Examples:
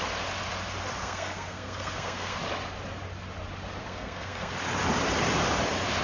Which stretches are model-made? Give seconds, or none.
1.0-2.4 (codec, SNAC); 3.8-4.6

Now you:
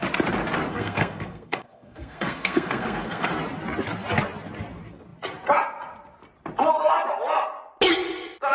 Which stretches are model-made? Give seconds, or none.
0.7-3.3 (codec, SNAC)

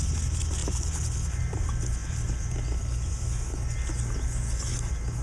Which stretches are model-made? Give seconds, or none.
none